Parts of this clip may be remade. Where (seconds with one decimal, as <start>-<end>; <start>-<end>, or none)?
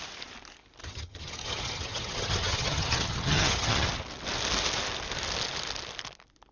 0.8-3.9